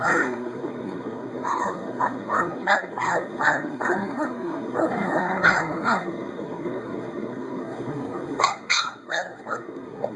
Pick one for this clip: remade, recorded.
remade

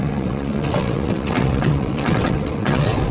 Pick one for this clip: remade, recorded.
remade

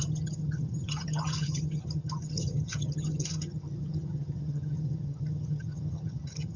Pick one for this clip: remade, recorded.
remade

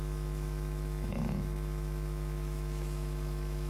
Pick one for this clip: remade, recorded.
remade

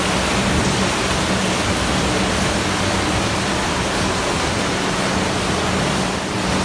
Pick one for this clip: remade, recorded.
recorded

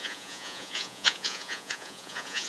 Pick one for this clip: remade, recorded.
remade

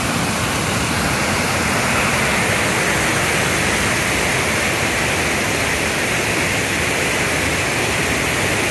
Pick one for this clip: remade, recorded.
recorded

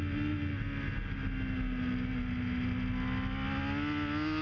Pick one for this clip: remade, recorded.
recorded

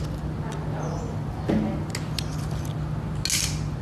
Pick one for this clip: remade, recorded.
recorded